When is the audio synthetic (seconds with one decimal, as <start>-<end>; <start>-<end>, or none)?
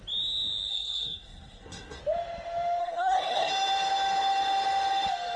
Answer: 0.7-2.0; 2.8-3.5